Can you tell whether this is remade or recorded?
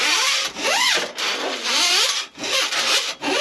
remade